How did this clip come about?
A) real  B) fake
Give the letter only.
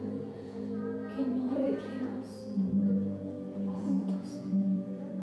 B